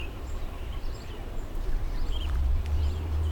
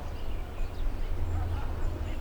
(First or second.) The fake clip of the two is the first